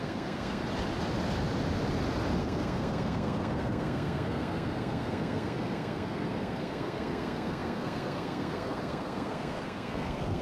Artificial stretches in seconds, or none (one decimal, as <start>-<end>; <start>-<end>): 0.0-0.6; 2.4-10.4